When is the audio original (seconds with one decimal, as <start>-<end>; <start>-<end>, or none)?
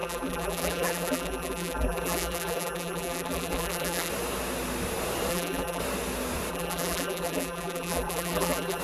4.1-5.3; 5.8-6.5